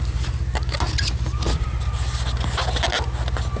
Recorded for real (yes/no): yes